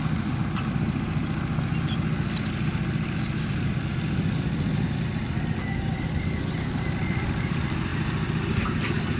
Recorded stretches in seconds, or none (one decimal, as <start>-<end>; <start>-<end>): 0.0-9.2